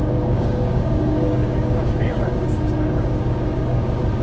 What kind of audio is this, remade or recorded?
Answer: remade